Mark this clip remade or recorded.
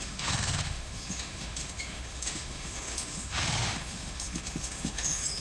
remade